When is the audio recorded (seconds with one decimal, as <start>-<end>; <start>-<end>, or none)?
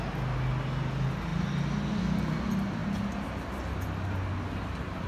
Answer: 0.0-5.1